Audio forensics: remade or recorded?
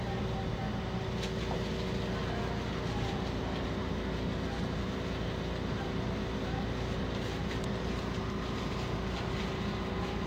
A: recorded